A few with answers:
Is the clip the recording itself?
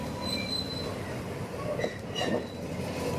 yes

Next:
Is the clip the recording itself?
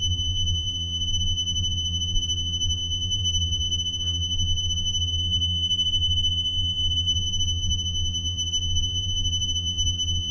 no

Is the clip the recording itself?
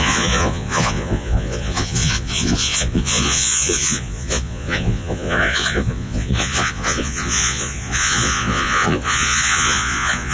no